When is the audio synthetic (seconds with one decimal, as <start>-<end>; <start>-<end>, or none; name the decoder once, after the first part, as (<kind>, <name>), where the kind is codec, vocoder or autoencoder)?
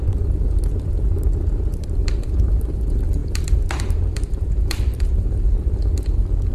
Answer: 1.7-2.3 (vocoder, BigVGAN v2); 3.2-5.3